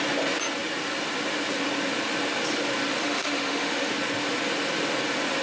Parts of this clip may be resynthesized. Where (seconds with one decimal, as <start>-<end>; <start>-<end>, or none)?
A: 3.0-3.9